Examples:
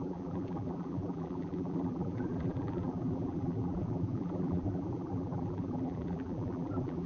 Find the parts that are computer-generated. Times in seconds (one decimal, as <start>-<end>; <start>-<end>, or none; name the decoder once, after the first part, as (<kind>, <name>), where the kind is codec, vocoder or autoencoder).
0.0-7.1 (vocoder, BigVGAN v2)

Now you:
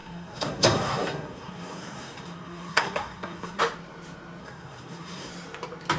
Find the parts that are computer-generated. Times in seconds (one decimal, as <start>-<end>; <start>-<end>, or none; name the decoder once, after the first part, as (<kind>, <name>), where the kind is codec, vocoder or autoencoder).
0.0-3.6 (codec, SNAC); 4.4-5.3

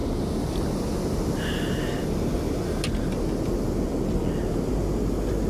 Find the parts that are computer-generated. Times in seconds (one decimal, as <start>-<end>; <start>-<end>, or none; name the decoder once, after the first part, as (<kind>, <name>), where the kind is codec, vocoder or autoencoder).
none

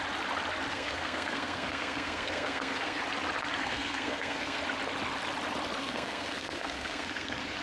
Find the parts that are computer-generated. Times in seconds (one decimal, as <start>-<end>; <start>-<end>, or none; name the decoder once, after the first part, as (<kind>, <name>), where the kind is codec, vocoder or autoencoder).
0.7-3.0 (codec, SNAC); 3.6-4.6; 5.8-7.6

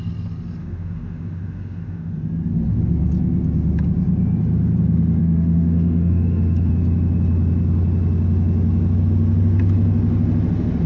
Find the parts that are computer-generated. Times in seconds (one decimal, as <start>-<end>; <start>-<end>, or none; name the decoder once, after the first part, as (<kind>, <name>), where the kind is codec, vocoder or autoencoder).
0.6-2.1 (autoencoder, DAC-VAE); 5.2-6.7

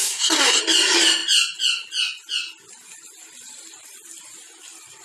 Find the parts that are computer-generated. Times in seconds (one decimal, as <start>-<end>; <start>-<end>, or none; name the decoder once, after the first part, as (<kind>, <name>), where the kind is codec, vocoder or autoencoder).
0.0-0.6 (codec, SNAC)

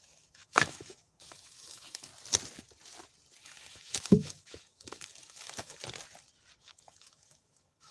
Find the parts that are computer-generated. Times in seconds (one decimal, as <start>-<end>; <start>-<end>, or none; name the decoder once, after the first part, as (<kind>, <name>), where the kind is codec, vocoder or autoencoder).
0.0-2.1 (autoencoder, DAC-VAE); 3.4-5.8; 6.6-7.9